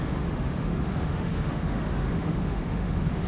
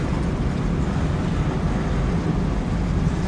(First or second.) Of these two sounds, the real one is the second